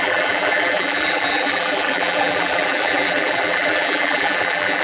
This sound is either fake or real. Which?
fake